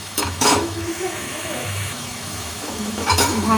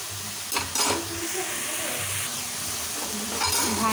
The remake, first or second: first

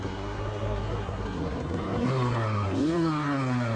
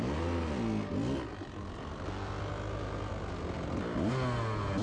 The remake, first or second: first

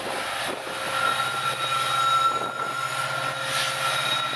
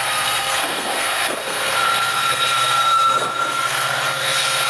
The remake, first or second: second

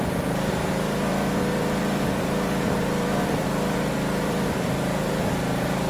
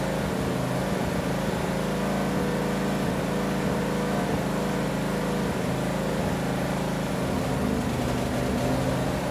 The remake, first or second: first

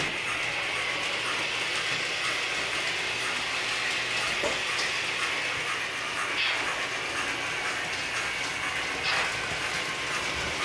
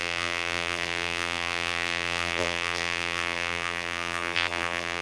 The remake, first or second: second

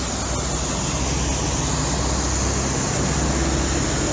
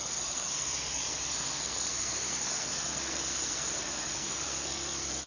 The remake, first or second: second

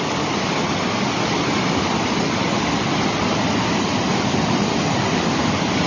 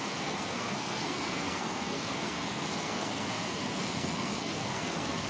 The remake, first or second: second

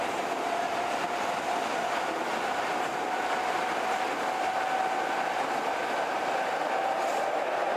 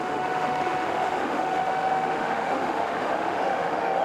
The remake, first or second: second